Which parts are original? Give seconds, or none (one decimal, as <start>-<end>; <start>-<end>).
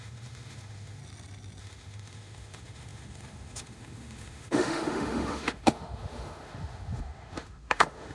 1.0-1.6